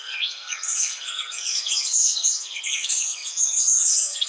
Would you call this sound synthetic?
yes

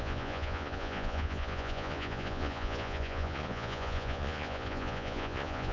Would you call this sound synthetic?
yes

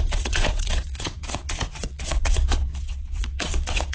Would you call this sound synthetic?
yes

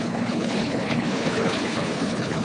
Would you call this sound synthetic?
yes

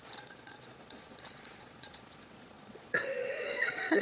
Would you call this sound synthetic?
yes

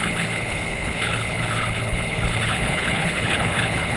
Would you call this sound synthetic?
yes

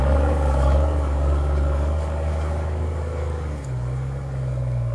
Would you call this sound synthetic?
yes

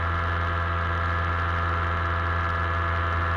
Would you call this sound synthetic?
no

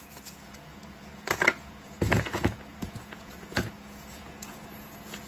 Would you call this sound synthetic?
yes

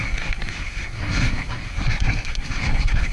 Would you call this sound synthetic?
yes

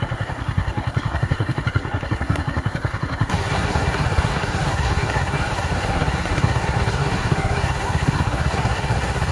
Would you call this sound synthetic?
yes